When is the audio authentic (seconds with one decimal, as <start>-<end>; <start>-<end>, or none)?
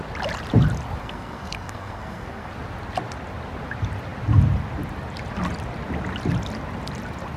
0.0-1.0; 2.5-7.4